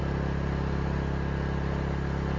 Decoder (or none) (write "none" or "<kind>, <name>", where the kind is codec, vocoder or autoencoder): none